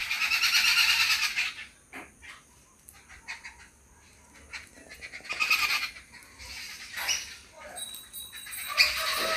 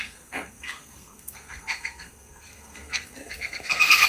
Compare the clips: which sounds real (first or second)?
first